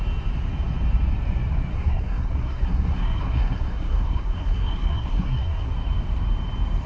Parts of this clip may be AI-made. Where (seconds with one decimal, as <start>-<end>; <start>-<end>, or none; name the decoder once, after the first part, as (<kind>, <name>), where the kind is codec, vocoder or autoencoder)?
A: 1.7-5.7 (codec, SNAC)

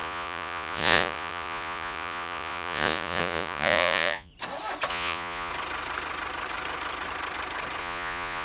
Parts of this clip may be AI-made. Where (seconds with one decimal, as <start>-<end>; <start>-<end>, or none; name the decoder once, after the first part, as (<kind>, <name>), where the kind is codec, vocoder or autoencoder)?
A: 0.0-4.3 (vocoder, Vocos); 4.9-5.5; 7.8-8.4

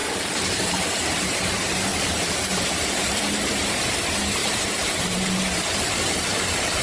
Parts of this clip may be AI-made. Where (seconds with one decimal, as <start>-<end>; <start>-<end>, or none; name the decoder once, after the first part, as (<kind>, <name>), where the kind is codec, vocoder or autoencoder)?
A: 0.0-6.8 (vocoder, BigVGAN v2)

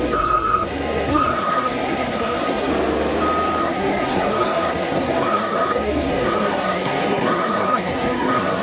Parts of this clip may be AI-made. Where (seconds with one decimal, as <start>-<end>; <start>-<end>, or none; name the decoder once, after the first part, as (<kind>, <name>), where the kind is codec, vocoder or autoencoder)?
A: 0.0-2.7 (codec, SNAC); 3.6-8.6

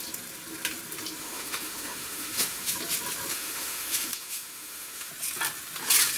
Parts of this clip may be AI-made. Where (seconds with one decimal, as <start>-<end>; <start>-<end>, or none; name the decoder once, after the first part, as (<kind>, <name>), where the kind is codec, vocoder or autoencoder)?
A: 1.2-2.7 (autoencoder, DAC-VAE); 3.3-5.1

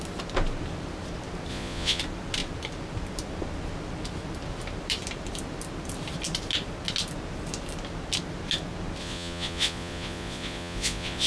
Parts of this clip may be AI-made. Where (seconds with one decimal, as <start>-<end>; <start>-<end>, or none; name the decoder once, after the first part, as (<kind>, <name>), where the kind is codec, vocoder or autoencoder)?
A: 1.5-2.0 (vocoder, Vocos); 9.0-11.3

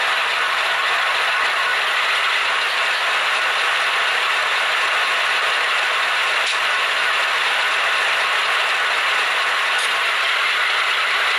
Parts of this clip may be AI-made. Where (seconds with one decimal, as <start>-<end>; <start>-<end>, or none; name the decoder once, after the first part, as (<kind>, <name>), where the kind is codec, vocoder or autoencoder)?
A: none